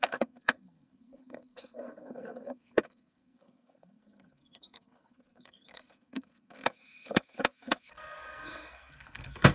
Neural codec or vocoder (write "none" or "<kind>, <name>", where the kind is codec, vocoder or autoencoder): codec, SNAC